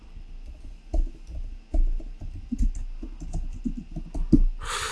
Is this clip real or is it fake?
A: real